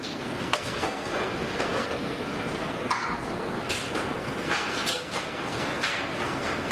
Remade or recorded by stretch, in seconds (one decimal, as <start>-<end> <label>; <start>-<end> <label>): 0.0-6.7 remade